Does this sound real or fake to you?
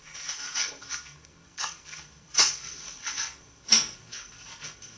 fake